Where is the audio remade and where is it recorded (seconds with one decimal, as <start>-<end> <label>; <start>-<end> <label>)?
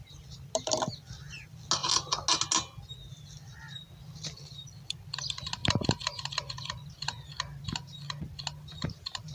0.0-9.3 recorded